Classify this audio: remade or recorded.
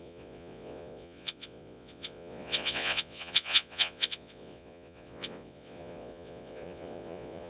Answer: remade